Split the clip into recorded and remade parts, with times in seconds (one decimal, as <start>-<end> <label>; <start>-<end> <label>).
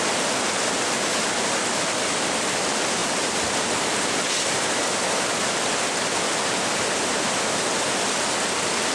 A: 0.0-1.1 recorded; 1.1-2.4 remade; 2.4-8.9 recorded